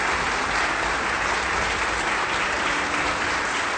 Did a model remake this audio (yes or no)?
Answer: no